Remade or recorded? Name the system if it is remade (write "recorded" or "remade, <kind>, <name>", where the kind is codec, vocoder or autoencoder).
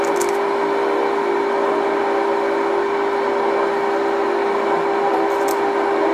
recorded